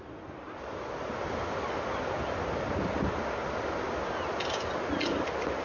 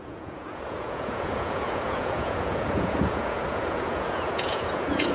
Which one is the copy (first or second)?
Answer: second